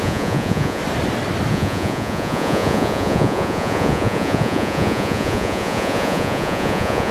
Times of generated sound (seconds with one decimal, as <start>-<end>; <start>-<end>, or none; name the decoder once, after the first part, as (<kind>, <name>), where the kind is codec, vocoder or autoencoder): 0.0-0.8 (vocoder, Vocos); 1.5-7.1